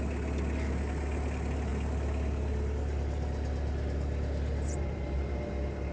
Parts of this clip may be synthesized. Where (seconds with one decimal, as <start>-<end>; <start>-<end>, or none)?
none